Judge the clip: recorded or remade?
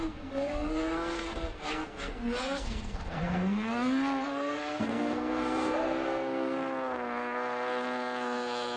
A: remade